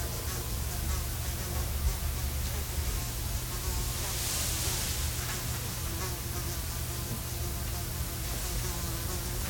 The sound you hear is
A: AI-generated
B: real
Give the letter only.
B